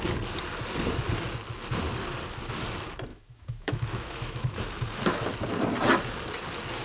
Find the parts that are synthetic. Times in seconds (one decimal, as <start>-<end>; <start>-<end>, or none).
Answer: 3.1-4.6